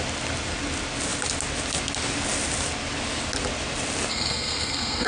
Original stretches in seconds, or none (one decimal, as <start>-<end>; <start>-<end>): 0.0-4.1